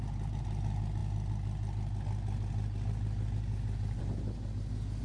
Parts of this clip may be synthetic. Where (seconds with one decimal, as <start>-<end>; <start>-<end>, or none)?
none